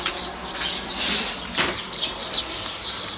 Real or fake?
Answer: real